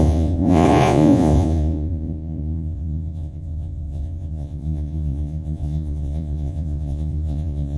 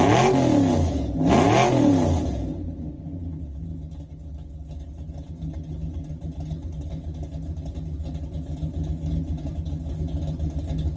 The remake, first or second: first